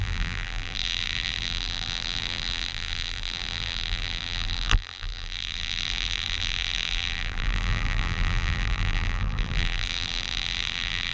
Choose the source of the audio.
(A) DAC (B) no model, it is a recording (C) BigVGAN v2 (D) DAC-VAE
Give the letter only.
C